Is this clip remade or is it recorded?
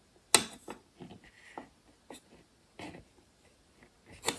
recorded